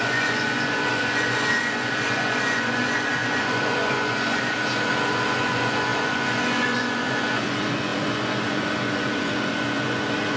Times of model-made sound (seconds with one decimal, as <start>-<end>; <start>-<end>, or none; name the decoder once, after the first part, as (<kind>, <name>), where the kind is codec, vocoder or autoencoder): 0.0-10.4 (vocoder, Vocos)